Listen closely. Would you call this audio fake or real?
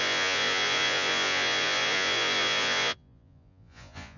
fake